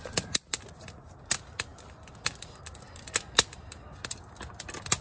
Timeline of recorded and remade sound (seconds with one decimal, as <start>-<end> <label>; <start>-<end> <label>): 0.0-5.0 recorded